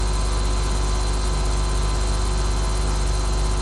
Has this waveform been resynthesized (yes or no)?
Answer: no